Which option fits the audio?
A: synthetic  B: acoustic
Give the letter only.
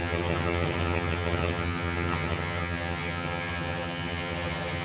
A